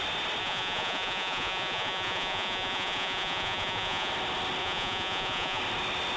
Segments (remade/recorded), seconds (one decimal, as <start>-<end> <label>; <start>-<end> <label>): 0.0-0.4 recorded; 0.4-4.1 remade; 4.1-4.6 recorded; 4.6-5.6 remade; 5.6-6.2 recorded

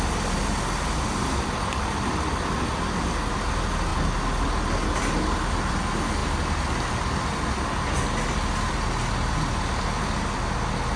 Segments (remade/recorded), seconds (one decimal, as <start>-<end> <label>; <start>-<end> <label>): 0.0-11.0 recorded

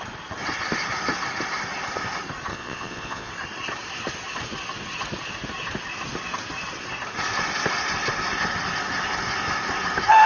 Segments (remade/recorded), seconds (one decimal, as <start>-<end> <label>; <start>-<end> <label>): 0.0-2.5 recorded; 2.5-3.3 remade; 3.3-10.3 recorded

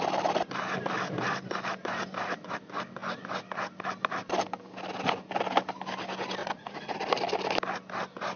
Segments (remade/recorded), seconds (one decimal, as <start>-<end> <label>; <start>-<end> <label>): 0.0-6.4 recorded; 6.4-7.1 remade; 7.1-8.4 recorded

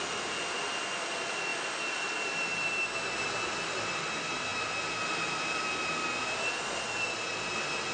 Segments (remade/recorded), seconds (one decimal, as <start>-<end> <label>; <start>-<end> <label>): 0.0-7.9 recorded